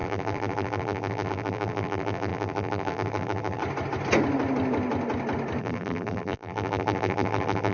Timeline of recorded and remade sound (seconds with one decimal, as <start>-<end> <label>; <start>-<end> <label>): 0.0-3.6 remade; 3.6-5.6 recorded; 5.6-7.7 remade